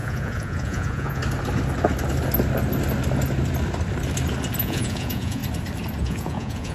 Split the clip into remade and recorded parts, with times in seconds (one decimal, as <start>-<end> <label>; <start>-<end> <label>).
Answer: 0.0-1.2 remade; 1.2-4.6 recorded; 4.6-5.4 remade; 5.4-6.0 recorded; 6.0-6.7 remade